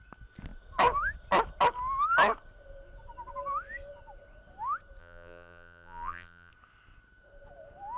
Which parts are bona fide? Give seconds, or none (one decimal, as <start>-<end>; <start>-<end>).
0.0-5.0; 6.5-8.0